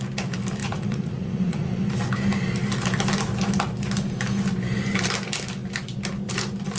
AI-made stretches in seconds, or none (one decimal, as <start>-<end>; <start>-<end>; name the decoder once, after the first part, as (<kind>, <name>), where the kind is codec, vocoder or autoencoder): 0.6-1.8 (vocoder, Vocos)